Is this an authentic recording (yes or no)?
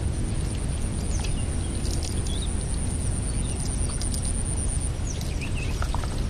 yes